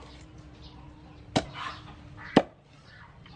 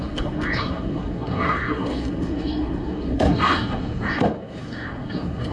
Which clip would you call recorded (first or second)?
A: first